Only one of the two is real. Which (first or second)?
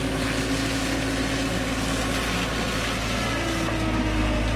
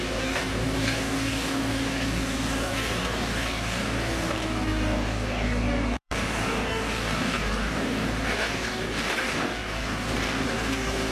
first